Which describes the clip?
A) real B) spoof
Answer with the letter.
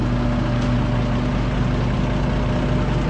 A